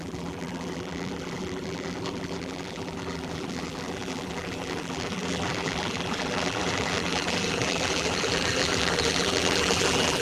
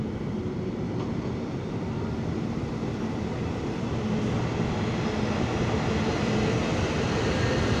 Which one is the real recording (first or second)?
second